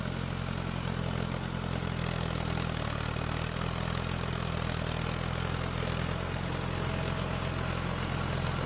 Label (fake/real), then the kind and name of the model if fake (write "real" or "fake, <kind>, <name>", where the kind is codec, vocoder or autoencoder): real